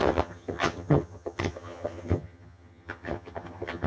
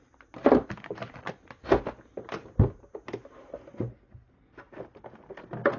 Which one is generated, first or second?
first